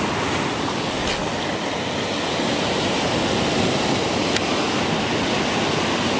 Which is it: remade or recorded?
recorded